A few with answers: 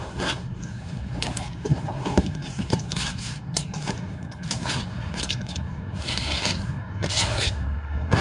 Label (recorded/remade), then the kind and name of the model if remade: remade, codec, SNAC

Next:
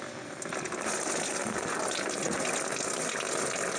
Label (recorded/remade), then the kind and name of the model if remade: recorded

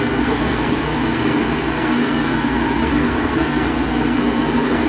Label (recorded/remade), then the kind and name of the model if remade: remade, codec, SNAC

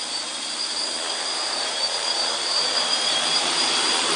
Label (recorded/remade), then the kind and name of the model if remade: remade, vocoder, BigVGAN v2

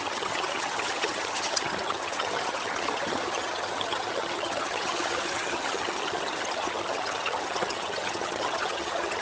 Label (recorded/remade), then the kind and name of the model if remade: remade, vocoder, HiFi-GAN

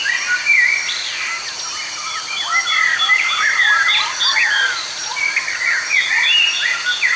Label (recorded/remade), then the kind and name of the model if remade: recorded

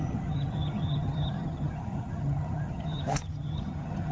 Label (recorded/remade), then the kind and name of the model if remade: remade, vocoder, HiFi-GAN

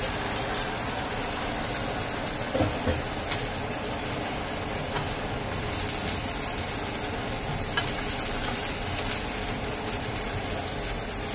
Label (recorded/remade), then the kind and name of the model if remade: recorded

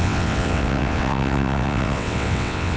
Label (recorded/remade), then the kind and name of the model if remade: remade, vocoder, WaveNeXt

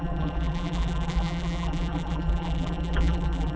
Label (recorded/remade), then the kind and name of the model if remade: remade, vocoder, BigVGAN v2